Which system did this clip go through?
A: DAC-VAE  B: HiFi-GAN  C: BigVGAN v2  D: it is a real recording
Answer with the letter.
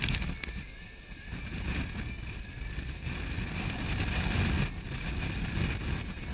D